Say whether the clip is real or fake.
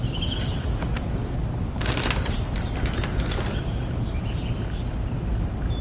real